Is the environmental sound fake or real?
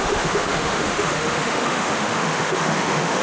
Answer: fake